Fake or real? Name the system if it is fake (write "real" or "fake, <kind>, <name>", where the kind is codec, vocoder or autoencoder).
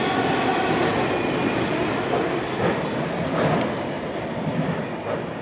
real